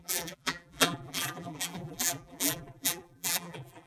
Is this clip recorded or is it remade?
remade